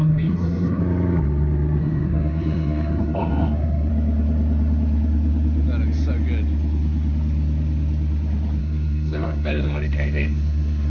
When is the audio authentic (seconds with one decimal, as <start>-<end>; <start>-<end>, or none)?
0.8-1.8; 3.9-8.6